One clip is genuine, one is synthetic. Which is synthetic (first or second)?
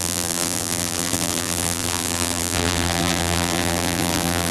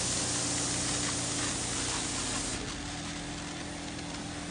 first